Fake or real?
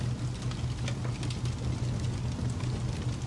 real